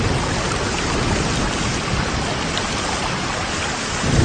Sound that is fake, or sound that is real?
real